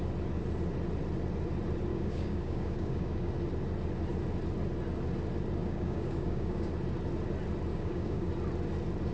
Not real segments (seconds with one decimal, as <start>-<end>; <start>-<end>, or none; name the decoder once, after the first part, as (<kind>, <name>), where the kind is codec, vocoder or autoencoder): 1.9-3.3 (codec, DAC); 5.6-6.7; 7.7-8.3